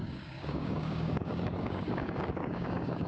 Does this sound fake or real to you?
fake